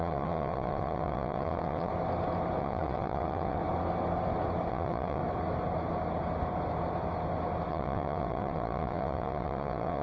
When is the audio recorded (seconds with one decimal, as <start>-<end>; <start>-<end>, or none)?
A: 1.9-2.6; 3.6-4.7; 5.2-7.7